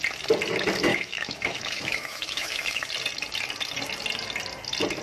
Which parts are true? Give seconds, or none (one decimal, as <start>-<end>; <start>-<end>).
0.0-0.9; 2.9-5.0